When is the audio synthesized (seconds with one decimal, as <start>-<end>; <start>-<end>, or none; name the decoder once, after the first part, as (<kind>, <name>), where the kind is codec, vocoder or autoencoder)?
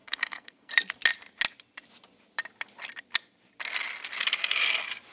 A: 0.0-0.7 (codec, SNAC)